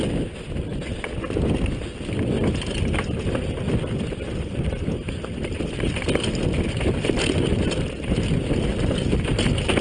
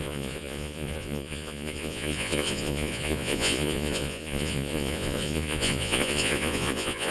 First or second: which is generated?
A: second